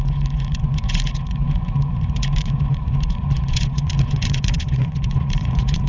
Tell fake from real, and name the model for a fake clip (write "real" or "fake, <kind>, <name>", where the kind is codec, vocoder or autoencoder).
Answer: fake, vocoder, Vocos